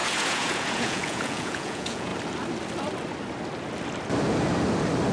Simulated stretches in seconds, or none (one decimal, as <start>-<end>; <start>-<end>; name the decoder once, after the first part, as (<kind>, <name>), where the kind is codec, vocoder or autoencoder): 0.0-2.1 (vocoder, Vocos)